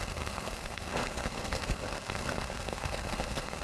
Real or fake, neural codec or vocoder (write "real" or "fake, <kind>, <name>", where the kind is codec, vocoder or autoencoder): fake, codec, SNAC